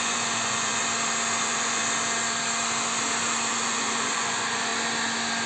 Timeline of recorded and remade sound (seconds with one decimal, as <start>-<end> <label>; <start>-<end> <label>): 0.0-0.8 remade; 0.8-1.4 recorded; 1.4-1.8 remade; 1.8-3.5 recorded; 3.5-4.7 remade; 4.7-5.5 recorded